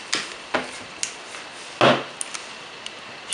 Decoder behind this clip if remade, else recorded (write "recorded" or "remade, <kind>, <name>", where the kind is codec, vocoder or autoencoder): recorded